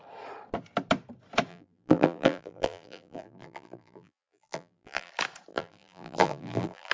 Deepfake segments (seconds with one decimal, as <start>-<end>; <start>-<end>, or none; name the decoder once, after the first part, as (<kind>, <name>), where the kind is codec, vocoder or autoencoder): 1.5-5.1 (vocoder, BigVGAN v2); 5.5-6.9